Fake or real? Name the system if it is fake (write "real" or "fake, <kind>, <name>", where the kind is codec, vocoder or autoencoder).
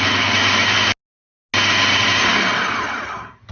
real